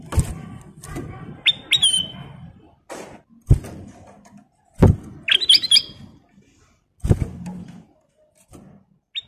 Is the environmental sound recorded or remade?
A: recorded